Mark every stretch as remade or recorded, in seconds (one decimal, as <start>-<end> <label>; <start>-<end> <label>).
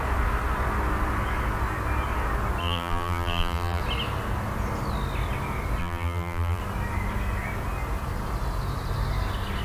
0.0-2.6 recorded; 2.6-3.8 remade; 3.8-5.8 recorded; 5.8-6.6 remade; 6.6-9.6 recorded